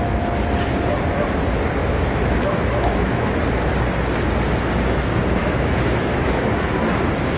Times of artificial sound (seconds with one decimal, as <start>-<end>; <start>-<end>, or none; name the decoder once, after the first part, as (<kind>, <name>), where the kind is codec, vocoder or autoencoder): 1.8-3.3 (autoencoder, DAC-VAE); 5.4-6.7